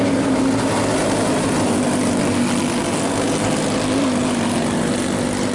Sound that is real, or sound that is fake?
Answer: real